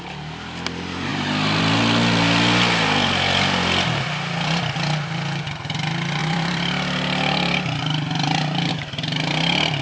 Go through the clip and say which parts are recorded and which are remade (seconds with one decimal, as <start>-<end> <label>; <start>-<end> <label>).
0.0-1.1 recorded; 1.1-1.6 remade; 1.6-6.2 recorded; 6.2-8.7 remade; 8.7-9.8 recorded

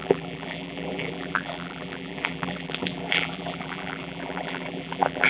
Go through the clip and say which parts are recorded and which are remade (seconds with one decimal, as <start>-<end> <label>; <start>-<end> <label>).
0.0-5.3 remade

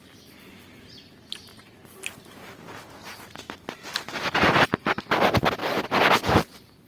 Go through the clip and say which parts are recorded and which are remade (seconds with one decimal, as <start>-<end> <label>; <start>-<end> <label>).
0.0-1.5 recorded; 1.5-2.1 remade; 2.1-5.6 recorded; 5.6-6.2 remade; 6.2-6.9 recorded

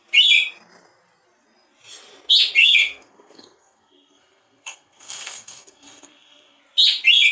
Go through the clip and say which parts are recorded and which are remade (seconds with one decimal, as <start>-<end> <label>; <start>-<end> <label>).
0.0-2.6 recorded; 2.6-6.6 remade; 6.6-7.3 recorded

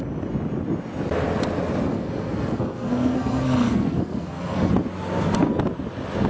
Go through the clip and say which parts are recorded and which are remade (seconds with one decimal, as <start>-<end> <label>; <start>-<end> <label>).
0.0-1.9 recorded; 1.9-4.7 remade; 4.7-6.3 recorded

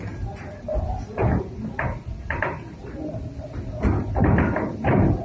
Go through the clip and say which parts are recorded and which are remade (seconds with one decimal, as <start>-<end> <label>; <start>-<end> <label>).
0.0-5.2 recorded

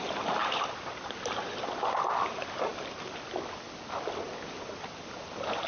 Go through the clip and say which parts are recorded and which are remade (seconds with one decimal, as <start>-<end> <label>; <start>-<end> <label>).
0.0-5.7 recorded

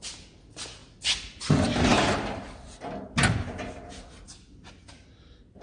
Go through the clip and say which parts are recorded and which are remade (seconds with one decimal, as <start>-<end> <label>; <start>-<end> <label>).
0.0-5.6 recorded